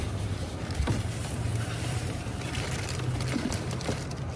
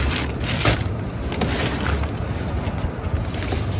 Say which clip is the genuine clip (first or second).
second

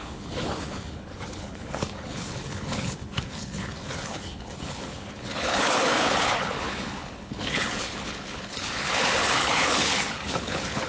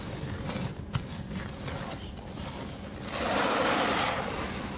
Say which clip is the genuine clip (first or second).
second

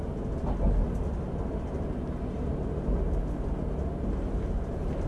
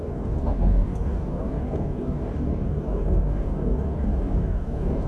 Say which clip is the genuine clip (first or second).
first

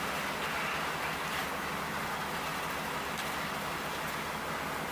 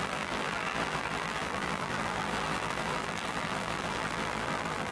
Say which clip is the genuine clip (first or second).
first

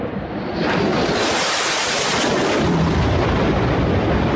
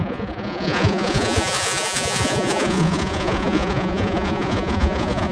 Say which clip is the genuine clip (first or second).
first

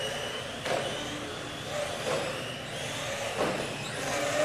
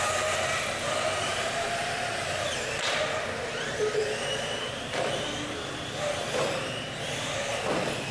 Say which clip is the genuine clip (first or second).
first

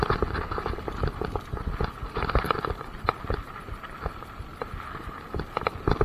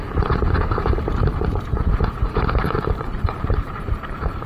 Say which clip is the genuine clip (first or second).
first